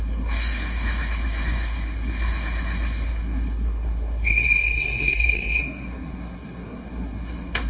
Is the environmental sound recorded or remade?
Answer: remade